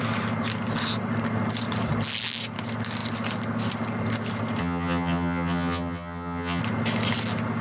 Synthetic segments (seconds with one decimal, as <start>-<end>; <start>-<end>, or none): 4.6-6.6